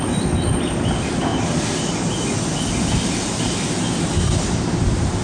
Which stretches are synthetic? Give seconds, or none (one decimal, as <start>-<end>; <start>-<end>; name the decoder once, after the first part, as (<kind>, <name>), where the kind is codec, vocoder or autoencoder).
none